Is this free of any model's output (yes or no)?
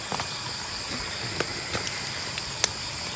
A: yes